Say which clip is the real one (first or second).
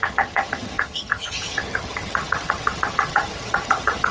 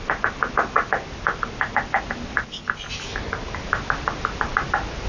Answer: second